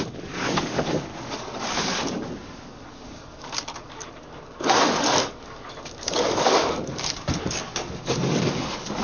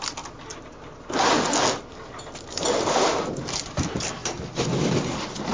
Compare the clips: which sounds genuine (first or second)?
second